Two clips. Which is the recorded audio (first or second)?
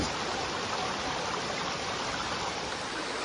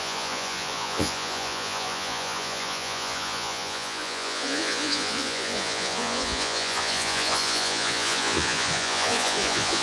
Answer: first